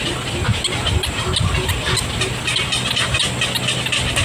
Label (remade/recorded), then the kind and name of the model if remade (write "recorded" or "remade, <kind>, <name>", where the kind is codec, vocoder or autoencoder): recorded